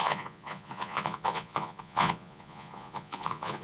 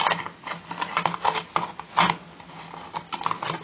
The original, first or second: second